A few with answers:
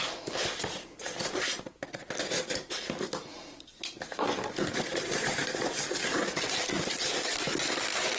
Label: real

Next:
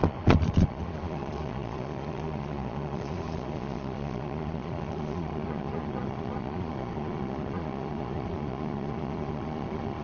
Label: fake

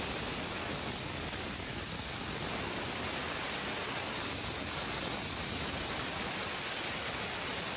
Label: real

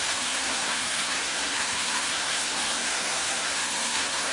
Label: fake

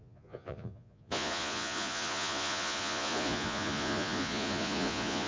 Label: fake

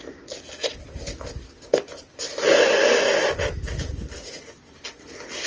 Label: real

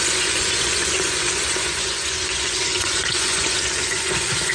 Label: fake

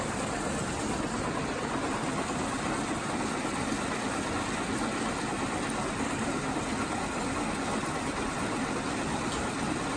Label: real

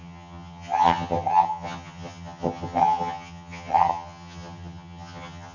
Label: fake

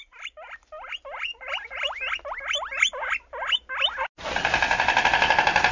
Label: real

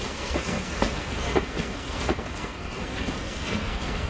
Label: fake